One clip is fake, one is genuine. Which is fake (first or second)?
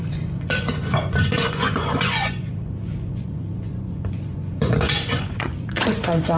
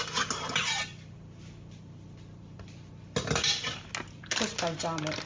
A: first